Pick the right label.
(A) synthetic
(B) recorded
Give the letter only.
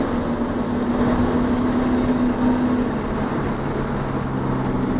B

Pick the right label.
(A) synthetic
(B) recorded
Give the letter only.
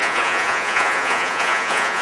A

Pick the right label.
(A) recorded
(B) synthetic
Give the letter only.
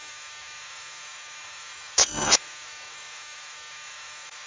B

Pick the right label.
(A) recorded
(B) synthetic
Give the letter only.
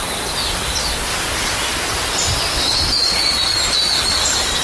A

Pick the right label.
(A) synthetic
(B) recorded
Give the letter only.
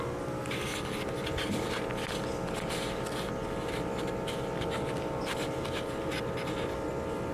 B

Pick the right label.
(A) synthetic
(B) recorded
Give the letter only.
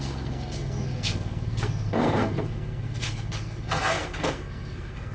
A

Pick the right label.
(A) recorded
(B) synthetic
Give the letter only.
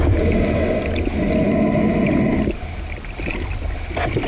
A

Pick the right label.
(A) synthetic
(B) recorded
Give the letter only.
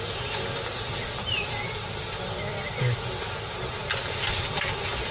B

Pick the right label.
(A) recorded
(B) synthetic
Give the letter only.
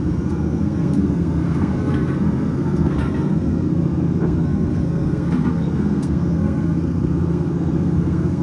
B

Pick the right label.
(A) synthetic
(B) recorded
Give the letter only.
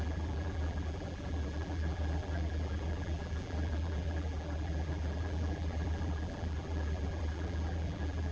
A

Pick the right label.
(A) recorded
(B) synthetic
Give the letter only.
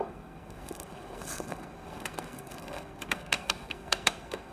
B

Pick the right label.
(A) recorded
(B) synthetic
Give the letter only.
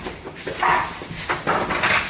A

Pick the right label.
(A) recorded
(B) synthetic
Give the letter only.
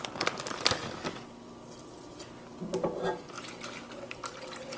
A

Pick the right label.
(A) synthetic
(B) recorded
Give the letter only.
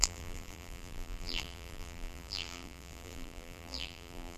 A